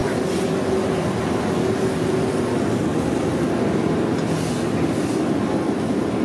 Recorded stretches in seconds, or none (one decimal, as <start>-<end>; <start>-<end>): 0.0-6.2